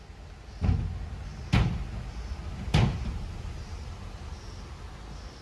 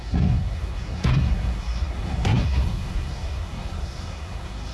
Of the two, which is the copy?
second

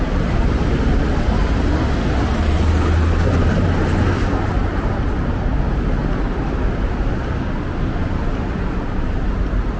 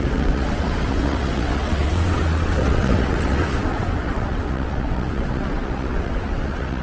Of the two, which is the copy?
second